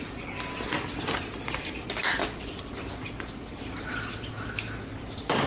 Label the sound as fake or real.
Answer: real